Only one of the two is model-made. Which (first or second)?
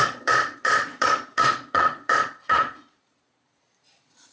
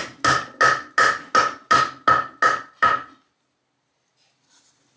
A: first